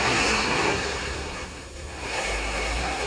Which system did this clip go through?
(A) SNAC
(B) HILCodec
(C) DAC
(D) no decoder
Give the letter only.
A